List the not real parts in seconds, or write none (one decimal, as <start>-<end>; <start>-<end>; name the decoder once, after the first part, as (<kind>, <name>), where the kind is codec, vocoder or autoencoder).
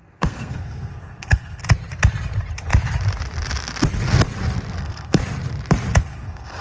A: 0.0-1.6 (codec, SNAC); 4.8-5.2; 6.0-6.6